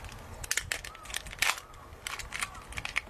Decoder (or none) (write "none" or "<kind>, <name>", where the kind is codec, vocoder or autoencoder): none